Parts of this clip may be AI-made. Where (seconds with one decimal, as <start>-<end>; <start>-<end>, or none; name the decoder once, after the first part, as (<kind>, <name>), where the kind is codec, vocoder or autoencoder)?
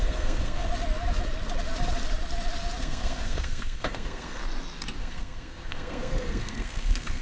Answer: 0.0-0.7 (codec, SNAC); 2.8-4.4; 5.0-7.2